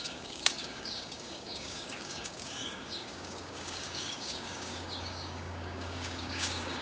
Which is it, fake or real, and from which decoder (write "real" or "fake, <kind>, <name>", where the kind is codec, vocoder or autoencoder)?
fake, codec, DAC